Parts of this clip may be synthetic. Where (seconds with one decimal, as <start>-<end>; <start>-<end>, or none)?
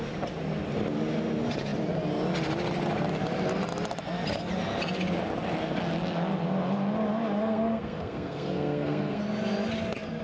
7.4-9.2